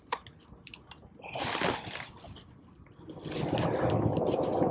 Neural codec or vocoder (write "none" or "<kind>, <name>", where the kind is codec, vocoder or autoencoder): none